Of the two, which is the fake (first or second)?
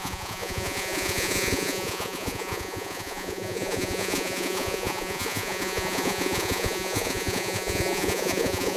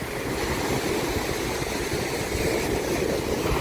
first